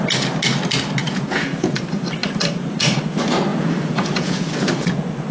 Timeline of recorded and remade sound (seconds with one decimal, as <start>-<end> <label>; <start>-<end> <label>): 0.0-1.0 recorded; 1.0-1.8 remade; 1.8-3.5 recorded; 3.5-4.7 remade; 4.7-5.3 recorded